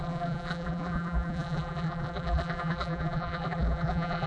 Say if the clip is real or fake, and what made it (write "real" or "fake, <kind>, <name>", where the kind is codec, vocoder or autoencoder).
fake, vocoder, BigVGAN v2